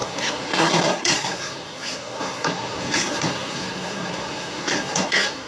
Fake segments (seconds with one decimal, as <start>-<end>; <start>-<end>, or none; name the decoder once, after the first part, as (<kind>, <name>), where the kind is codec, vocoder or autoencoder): 0.0-5.5 (codec, SNAC)